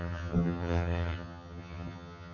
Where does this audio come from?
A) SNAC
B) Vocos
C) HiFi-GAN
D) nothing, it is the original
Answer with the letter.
C